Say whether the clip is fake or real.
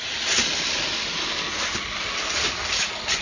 real